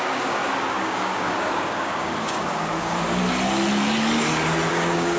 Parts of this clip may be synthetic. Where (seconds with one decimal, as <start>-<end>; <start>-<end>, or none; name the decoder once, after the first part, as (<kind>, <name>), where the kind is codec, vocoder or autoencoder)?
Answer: 0.0-3.2 (codec, DAC); 4.7-5.2